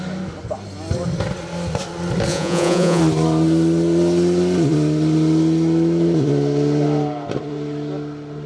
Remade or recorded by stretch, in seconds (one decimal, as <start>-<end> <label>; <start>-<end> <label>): 0.0-2.3 recorded; 2.3-3.0 remade; 3.0-8.5 recorded